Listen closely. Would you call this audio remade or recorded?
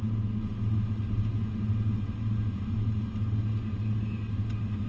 recorded